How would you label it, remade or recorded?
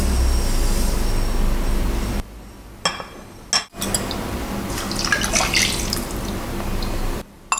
recorded